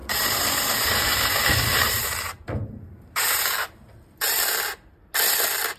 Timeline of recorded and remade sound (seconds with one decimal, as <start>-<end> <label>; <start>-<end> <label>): 0.0-3.5 remade; 3.5-5.8 recorded